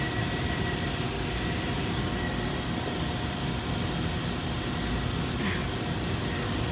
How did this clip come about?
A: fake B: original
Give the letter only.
B